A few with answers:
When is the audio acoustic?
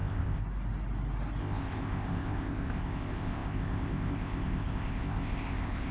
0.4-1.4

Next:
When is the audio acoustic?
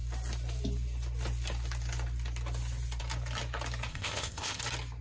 0.0-3.9; 4.6-5.0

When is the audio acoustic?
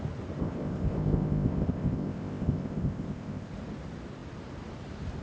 0.0-0.4; 3.5-5.2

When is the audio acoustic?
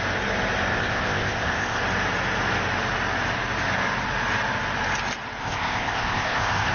0.0-0.7; 1.8-5.4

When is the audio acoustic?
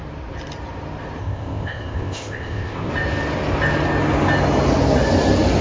0.0-1.2; 2.9-5.6